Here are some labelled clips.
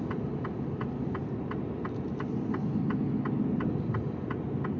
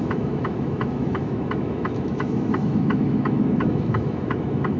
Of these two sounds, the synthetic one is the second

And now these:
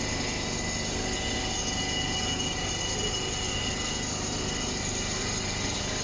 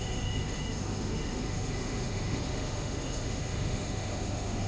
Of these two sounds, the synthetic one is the second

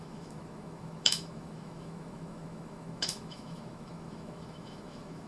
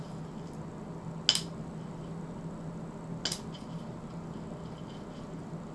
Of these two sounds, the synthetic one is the first